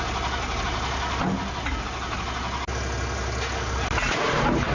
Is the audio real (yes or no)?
yes